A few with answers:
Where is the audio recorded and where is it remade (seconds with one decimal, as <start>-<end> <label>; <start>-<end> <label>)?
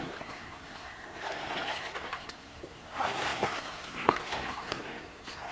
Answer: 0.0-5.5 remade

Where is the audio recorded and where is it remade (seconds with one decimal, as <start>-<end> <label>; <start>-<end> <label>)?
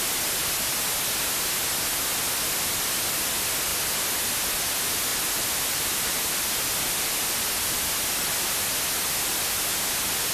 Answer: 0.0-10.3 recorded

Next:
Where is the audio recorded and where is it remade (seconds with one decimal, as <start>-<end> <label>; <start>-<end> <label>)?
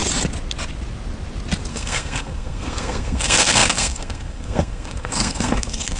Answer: 0.0-1.7 recorded; 1.7-6.0 remade